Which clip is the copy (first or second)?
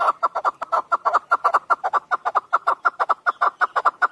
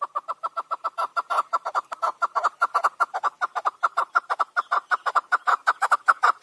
second